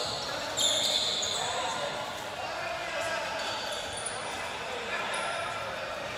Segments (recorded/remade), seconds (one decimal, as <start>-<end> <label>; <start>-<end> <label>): 0.0-2.8 recorded; 2.8-6.2 remade